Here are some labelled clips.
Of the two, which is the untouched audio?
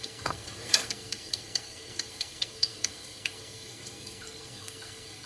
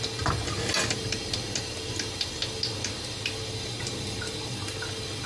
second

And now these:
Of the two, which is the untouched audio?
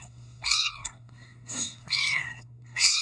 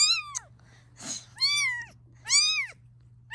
second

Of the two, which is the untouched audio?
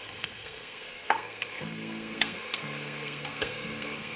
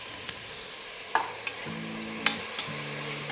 second